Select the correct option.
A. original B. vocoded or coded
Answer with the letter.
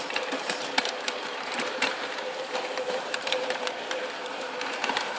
B